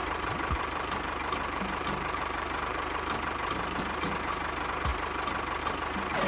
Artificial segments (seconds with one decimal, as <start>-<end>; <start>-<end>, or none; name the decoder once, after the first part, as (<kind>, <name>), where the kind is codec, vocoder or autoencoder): 0.0-3.8 (vocoder, BigVGAN v2)